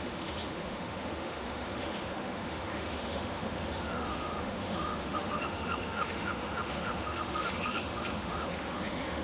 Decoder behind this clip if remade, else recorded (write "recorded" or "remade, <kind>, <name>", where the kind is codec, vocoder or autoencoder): remade, autoencoder, DAC-VAE